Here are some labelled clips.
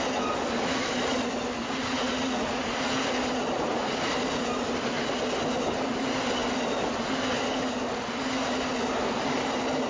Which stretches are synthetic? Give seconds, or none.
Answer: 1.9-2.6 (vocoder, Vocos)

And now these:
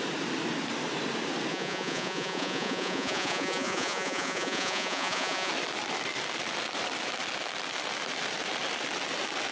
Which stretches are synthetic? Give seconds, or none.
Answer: 1.5-5.5 (vocoder, Vocos)

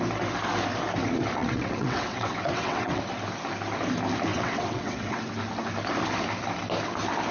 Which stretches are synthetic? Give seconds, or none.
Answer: 1.4-3.0 (vocoder, WaveNeXt); 4.3-5.2

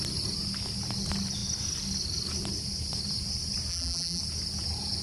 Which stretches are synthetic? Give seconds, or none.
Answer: 3.7-4.2 (vocoder, BigVGAN v2)

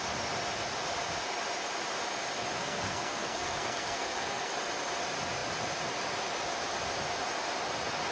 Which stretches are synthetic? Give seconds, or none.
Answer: 2.6-4.5 (codec, SNAC)

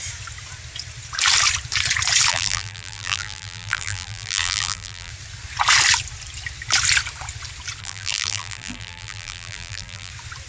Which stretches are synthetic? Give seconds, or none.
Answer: 2.3-5.1 (vocoder, BigVGAN v2); 7.8-10.1

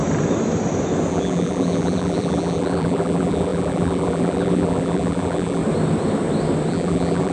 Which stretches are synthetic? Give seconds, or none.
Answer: 1.1-5.6 (vocoder, BigVGAN v2); 6.7-7.3

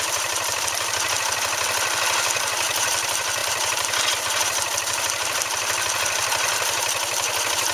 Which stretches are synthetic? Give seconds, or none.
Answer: none